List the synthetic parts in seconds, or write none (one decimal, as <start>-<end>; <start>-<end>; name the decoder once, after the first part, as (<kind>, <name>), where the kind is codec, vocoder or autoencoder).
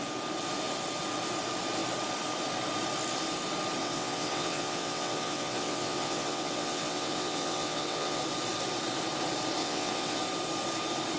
3.8-8.2 (vocoder, WaveNeXt); 9.6-10.2